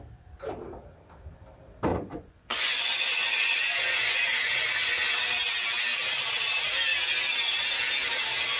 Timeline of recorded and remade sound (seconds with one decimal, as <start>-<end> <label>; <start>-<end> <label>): 0.0-1.9 recorded; 1.9-5.2 remade; 5.2-8.6 recorded